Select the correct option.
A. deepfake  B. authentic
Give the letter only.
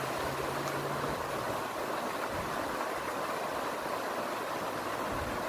B